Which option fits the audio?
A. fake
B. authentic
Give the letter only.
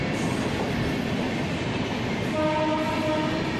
B